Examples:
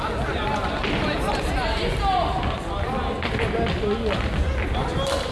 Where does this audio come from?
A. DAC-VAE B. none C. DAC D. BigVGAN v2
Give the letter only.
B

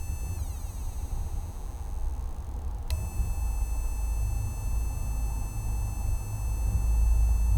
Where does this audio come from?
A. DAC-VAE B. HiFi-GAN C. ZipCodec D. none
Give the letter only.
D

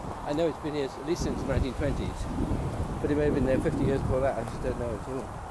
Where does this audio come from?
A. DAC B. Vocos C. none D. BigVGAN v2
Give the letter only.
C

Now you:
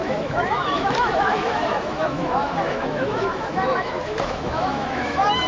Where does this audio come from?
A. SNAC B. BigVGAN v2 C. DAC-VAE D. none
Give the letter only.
C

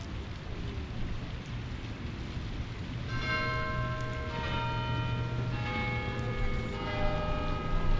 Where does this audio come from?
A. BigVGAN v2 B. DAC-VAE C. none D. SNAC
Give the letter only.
C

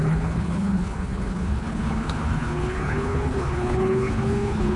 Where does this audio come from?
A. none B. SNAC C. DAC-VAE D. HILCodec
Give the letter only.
D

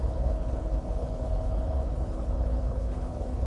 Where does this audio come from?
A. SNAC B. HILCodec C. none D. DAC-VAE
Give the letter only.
B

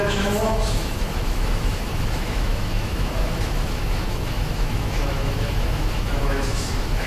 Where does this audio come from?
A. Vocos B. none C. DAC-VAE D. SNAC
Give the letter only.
C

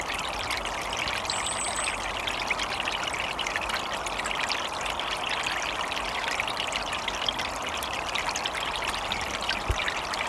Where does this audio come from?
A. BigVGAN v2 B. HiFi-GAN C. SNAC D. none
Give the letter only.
D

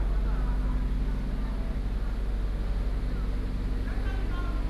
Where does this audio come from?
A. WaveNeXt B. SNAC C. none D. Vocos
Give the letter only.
C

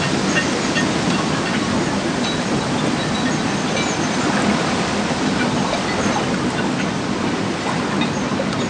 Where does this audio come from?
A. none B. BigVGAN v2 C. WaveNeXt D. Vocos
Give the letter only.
A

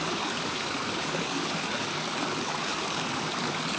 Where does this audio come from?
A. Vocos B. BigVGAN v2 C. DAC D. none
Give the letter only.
C